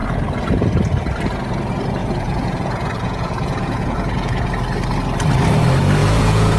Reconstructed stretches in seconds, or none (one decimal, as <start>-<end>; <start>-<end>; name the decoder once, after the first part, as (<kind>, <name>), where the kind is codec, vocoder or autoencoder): 2.0-4.5 (vocoder, Vocos); 6.0-6.6